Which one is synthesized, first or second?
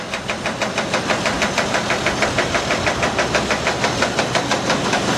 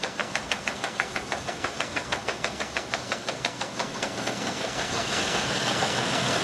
second